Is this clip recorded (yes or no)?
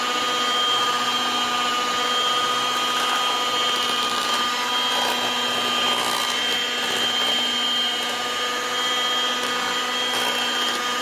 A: yes